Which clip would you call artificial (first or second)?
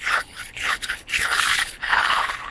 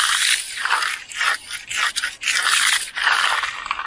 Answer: first